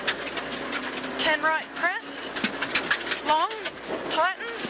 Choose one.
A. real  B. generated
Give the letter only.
A